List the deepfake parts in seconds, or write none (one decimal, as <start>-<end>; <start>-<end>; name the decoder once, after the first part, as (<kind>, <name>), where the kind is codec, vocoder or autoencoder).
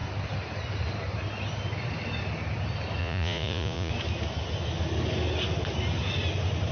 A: 3.0-3.9 (vocoder, Vocos)